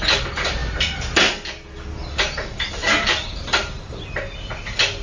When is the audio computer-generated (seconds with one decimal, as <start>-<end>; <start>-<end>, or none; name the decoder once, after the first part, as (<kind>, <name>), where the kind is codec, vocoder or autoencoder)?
none